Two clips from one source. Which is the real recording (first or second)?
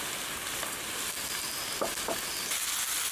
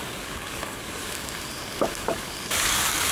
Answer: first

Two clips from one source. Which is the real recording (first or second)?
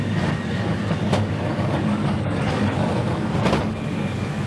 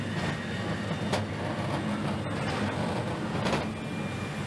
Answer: second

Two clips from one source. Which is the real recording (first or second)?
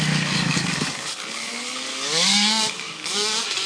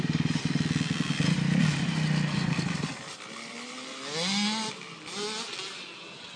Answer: second